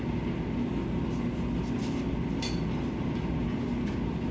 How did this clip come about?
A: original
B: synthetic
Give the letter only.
A